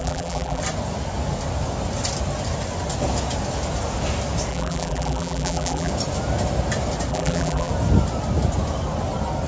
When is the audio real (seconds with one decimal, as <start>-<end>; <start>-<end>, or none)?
0.6-4.5; 5.9-7.1; 7.7-9.5